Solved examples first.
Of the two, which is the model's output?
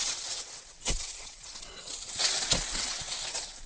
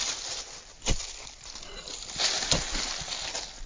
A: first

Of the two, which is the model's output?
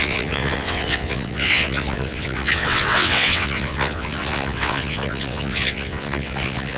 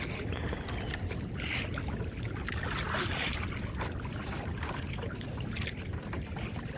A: first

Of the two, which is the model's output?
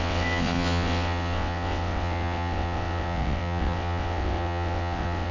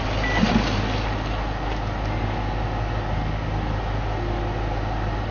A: first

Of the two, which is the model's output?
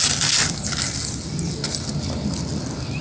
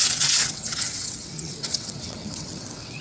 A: second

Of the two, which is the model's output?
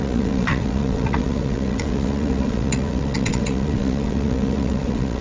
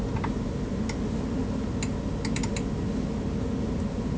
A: first